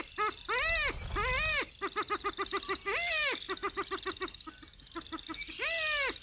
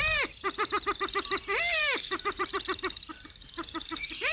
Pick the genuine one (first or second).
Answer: first